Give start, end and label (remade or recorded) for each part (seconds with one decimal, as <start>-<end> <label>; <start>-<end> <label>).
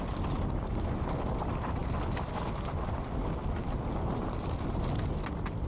0.0-5.7 recorded